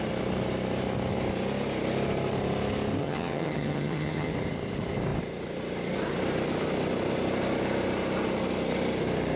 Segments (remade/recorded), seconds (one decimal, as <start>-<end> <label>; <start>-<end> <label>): 0.0-3.0 recorded; 3.0-4.3 remade; 4.3-9.4 recorded